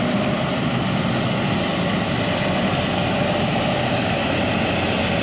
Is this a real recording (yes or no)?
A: yes